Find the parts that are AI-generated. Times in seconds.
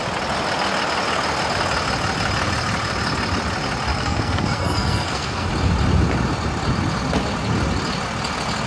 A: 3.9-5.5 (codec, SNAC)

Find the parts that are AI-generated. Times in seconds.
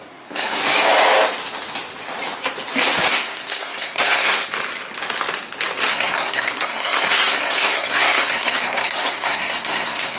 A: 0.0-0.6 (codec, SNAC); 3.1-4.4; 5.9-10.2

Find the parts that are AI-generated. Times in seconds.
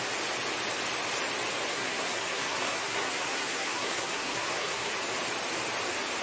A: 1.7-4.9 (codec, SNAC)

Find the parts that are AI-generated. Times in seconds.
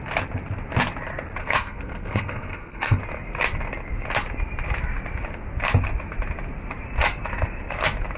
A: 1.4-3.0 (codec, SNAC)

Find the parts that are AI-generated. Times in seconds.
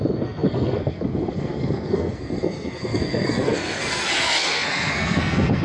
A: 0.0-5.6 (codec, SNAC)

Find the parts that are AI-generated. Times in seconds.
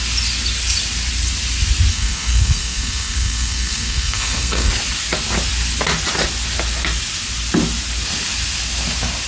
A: 1.9-4.7 (codec, SNAC)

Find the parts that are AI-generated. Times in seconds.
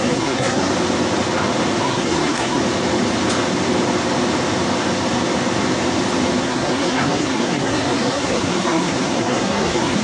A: 0.0-0.7 (codec, SNAC); 1.8-2.6; 6.4-10.0